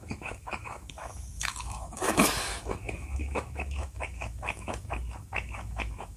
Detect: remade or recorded remade